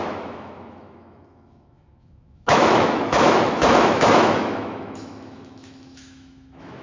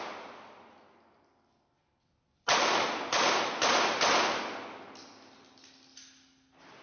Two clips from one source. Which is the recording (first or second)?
second